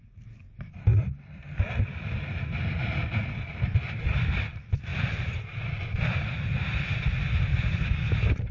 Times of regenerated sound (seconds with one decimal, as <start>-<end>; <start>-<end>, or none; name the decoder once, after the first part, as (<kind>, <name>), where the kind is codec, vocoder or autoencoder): 7.5-8.1 (codec, DAC)